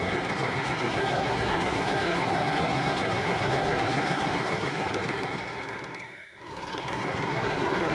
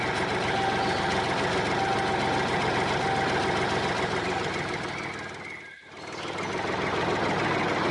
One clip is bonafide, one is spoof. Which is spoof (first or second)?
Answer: first